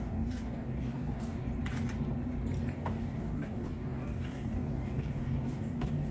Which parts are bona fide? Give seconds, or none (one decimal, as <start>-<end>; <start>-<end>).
1.4-2.7